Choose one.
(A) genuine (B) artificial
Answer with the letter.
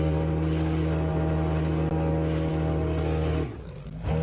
A